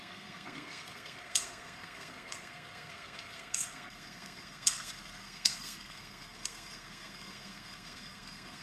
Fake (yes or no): yes